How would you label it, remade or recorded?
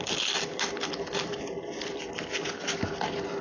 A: recorded